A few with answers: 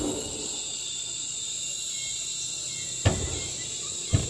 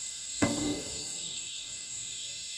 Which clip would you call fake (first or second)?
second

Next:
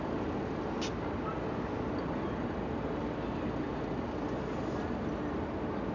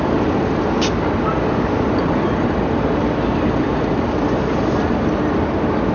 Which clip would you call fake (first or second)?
second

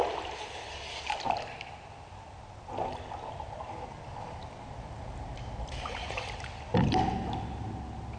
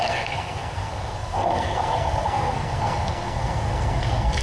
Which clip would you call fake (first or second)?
second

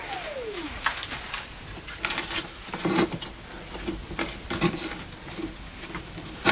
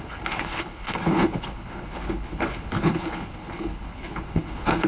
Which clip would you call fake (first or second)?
second